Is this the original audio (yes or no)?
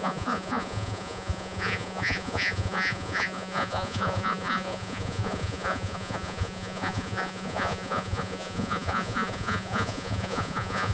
no